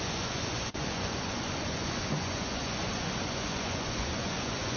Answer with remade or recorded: remade